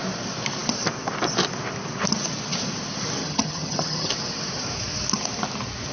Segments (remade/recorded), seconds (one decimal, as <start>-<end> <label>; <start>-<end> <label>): 0.0-3.2 recorded; 3.2-4.1 remade; 4.1-5.9 recorded